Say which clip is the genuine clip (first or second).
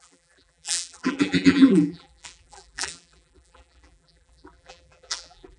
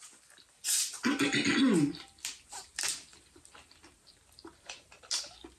second